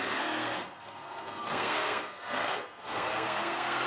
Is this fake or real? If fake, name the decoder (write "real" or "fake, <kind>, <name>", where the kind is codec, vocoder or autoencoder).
fake, codec, SNAC